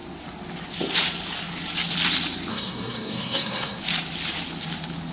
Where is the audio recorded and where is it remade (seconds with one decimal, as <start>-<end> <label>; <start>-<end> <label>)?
0.0-2.5 recorded; 2.5-3.8 remade; 3.8-5.1 recorded